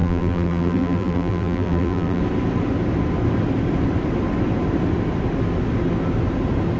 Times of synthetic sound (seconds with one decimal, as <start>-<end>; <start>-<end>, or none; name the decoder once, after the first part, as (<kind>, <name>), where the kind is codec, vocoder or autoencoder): 0.0-2.2 (vocoder, BigVGAN v2)